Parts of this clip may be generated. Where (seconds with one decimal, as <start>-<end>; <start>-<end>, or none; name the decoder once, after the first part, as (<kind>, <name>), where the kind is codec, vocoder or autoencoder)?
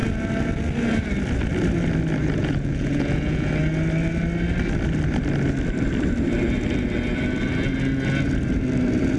2.4-3.5 (vocoder, Vocos)